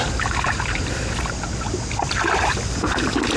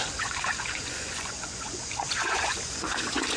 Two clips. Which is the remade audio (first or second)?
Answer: second